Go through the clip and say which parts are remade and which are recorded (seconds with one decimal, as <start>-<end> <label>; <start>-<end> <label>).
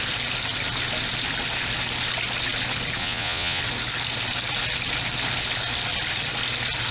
0.0-3.0 recorded; 3.0-3.6 remade; 3.6-6.9 recorded